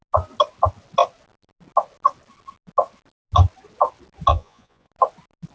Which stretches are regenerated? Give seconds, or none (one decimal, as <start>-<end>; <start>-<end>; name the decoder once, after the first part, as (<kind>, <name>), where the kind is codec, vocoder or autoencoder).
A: 4.3-4.9 (vocoder, Vocos)